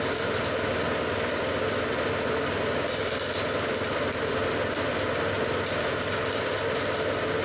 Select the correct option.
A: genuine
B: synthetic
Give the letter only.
A